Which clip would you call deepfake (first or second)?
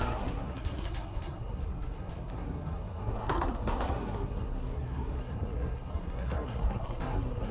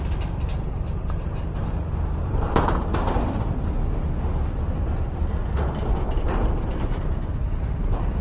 first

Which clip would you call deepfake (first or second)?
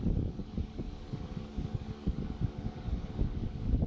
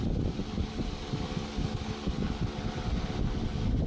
first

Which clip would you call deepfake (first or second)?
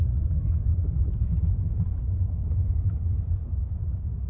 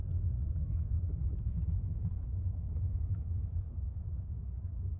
second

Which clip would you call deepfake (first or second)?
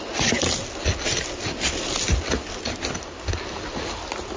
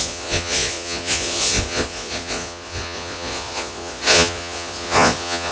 second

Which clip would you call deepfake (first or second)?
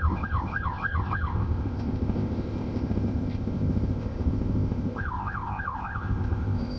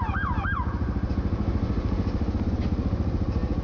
first